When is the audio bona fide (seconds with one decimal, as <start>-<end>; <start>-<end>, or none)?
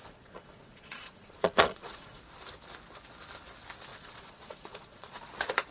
2.2-3.9; 5.2-5.7